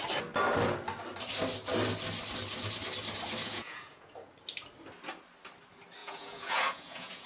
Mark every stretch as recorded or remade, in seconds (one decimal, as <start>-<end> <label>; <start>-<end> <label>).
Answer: 0.0-3.4 recorded; 3.4-4.1 remade; 4.1-6.0 recorded; 6.0-7.3 remade